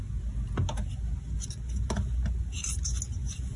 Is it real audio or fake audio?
real